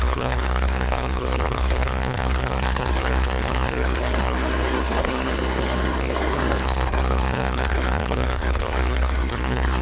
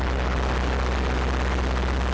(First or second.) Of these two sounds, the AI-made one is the first